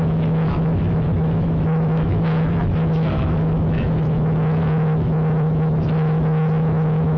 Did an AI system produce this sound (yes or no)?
yes